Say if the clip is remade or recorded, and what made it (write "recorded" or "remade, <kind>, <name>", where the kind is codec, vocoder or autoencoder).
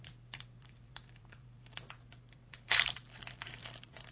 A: remade, vocoder, BigVGAN v2